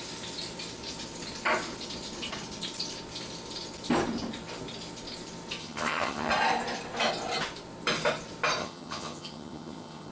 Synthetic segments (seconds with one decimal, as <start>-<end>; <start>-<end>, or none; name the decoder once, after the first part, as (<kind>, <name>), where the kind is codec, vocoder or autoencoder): 5.6-6.3 (vocoder, HiFi-GAN); 8.6-10.1